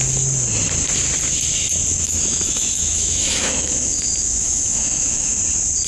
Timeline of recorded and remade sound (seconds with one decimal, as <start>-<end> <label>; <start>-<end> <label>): 0.0-1.9 recorded; 1.9-5.4 remade; 5.4-5.9 recorded